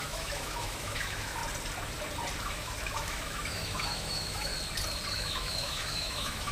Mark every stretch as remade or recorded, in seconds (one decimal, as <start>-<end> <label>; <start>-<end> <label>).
0.0-1.4 remade; 1.4-2.4 recorded; 2.4-4.5 remade; 4.5-5.1 recorded; 5.1-6.5 remade